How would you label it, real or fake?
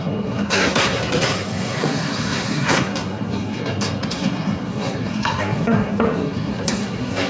fake